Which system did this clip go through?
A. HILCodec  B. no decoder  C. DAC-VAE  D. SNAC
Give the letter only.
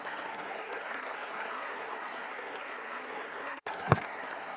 D